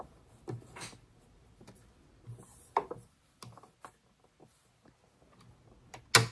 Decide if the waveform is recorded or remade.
recorded